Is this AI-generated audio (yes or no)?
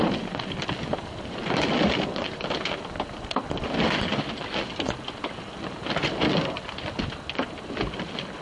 no